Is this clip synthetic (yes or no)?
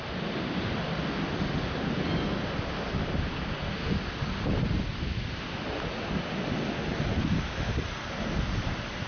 no